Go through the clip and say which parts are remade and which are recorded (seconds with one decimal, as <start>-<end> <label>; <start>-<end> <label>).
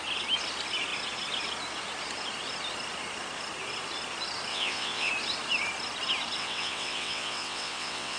0.0-4.5 recorded; 4.5-5.1 remade; 5.1-6.4 recorded; 6.4-8.2 remade